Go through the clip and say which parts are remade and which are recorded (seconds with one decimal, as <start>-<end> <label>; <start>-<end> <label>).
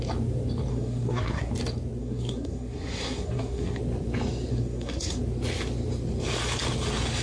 0.0-0.7 recorded; 0.7-1.5 remade; 1.5-2.0 recorded; 2.0-3.8 remade; 3.8-4.5 recorded; 4.5-5.2 remade; 5.2-7.2 recorded